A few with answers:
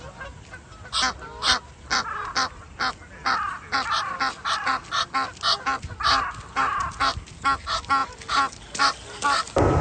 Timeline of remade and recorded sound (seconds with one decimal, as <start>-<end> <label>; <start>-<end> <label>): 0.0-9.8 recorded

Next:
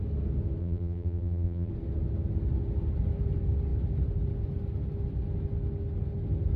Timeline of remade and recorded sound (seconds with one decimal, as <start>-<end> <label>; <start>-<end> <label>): 0.0-0.6 recorded; 0.6-1.7 remade; 1.7-6.6 recorded

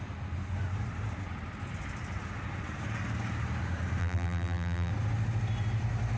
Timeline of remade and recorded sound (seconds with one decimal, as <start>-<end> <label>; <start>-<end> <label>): 0.0-4.0 recorded; 4.0-4.9 remade; 4.9-6.2 recorded

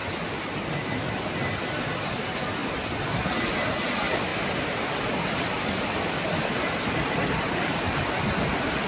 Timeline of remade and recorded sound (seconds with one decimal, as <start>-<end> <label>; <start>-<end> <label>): 0.0-1.1 recorded; 1.1-8.9 remade

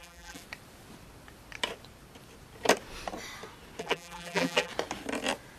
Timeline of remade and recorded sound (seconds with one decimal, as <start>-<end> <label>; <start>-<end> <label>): 0.0-0.4 remade; 0.4-3.8 recorded; 3.8-4.7 remade; 4.7-5.6 recorded